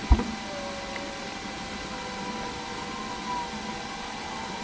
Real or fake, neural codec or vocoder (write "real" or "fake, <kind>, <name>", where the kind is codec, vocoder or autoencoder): real